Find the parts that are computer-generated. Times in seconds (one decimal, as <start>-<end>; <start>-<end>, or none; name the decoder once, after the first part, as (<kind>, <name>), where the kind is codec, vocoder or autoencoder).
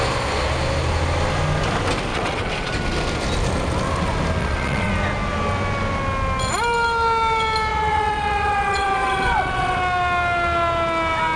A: 2.1-2.7 (vocoder, WaveNeXt); 4.4-4.9; 7.7-9.8